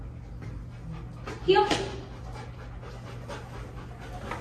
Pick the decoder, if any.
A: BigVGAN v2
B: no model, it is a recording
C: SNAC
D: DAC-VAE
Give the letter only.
B